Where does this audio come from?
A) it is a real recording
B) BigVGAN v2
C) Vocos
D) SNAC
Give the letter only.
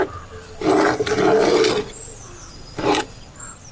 A